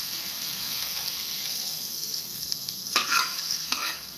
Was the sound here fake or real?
fake